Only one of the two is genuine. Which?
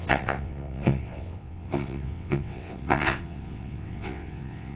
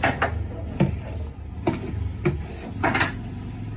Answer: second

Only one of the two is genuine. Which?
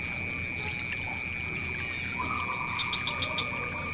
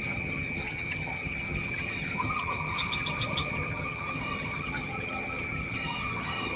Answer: first